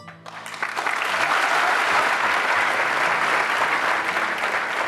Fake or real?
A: real